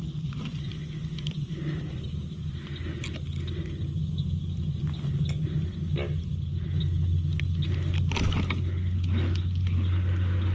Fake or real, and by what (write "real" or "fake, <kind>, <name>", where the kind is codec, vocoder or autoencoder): real